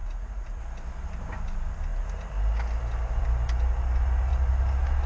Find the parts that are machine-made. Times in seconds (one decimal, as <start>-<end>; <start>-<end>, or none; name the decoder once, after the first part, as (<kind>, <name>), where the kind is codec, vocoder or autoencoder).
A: 0.0-0.6 (vocoder, Vocos)